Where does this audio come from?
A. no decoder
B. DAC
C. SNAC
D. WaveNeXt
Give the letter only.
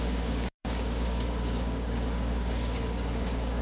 B